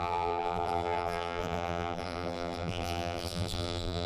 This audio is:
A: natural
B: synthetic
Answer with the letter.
B